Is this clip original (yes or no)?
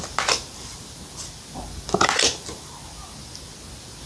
yes